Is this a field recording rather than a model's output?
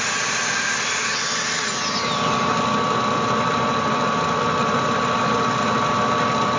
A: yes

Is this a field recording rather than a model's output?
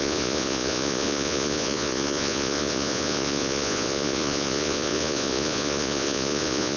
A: no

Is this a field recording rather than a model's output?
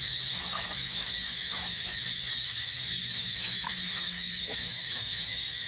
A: no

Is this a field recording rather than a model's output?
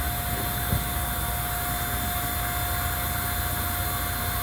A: yes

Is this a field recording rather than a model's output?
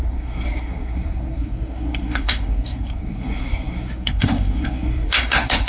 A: no